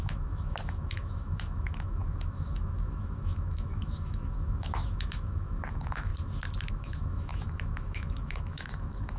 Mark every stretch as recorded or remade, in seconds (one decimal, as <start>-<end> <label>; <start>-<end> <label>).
0.0-6.1 remade; 6.1-6.7 recorded; 6.7-9.2 remade